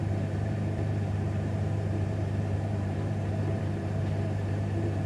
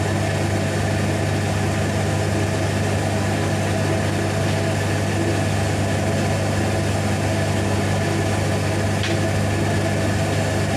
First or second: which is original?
second